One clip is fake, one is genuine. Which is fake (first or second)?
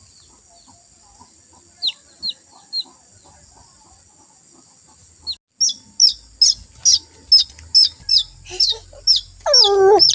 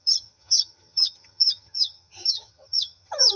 second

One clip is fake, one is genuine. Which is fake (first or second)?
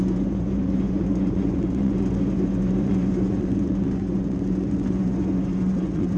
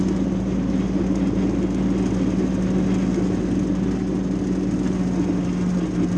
first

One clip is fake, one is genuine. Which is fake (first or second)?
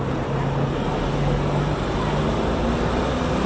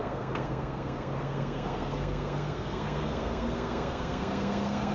second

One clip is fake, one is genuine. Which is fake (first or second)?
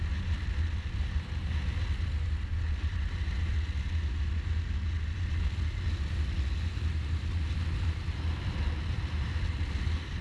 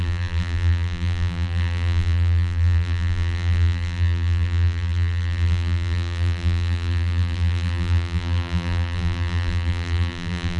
second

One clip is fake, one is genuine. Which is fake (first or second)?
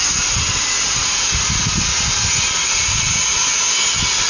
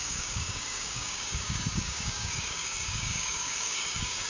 second